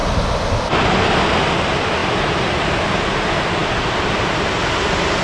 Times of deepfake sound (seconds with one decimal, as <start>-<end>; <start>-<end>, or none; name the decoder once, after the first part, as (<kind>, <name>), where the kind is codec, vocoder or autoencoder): none